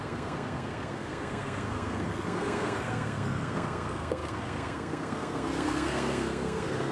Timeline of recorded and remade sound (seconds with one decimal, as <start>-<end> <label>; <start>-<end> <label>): 0.0-6.9 remade